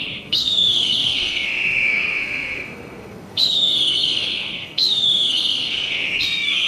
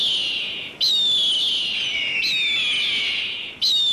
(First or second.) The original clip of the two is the second